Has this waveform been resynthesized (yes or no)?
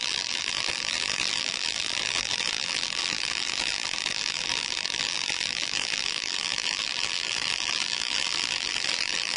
yes